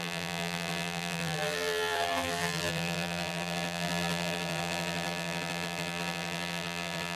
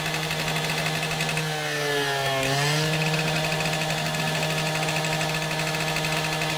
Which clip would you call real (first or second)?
second